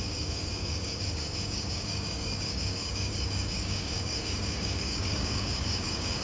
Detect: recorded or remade remade